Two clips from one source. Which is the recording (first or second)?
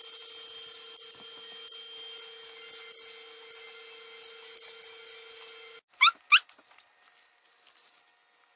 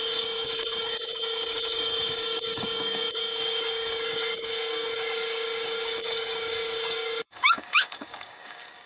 first